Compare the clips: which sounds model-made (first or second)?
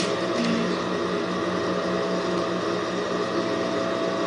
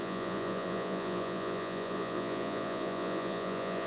second